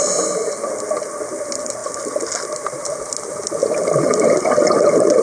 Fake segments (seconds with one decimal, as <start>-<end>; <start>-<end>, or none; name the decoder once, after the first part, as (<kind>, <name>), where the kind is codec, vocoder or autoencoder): none